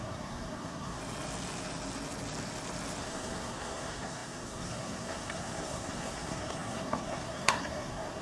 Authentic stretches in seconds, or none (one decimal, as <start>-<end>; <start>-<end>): 1.0-3.0